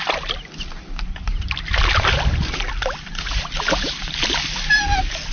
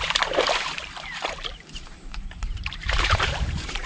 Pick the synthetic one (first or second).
second